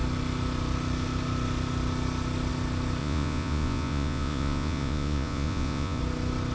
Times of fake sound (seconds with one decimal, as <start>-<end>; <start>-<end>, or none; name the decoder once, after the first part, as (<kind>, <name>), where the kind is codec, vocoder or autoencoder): 3.0-6.0 (vocoder, Vocos)